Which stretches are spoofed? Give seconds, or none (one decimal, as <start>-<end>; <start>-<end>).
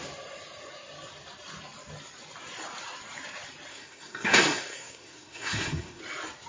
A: 3.7-6.0